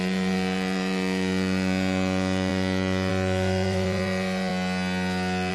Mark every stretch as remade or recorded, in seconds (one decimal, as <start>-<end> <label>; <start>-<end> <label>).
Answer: 0.0-4.5 remade; 4.5-5.5 recorded